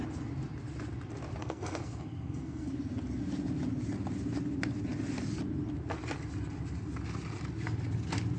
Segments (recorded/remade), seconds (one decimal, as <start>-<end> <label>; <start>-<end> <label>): 0.0-1.4 recorded; 1.4-2.7 remade; 2.7-8.4 recorded